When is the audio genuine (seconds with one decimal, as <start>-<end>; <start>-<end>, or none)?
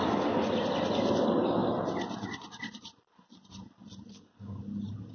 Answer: 0.0-4.1; 4.6-5.1